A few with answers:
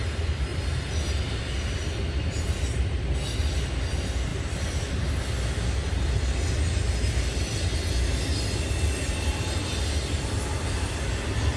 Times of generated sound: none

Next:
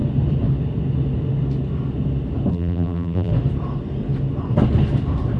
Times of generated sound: 2.5-3.3 (vocoder, BigVGAN v2)

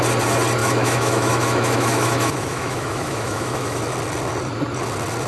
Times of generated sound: 0.6-3.8 (autoencoder, DAC-VAE)